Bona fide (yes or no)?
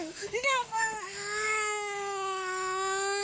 no